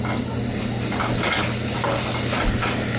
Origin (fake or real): real